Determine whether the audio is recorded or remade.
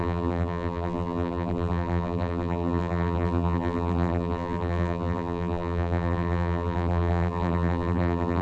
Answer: remade